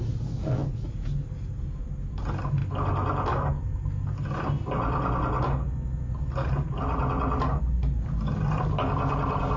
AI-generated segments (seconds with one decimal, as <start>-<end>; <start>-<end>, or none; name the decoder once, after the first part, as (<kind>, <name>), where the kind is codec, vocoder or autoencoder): none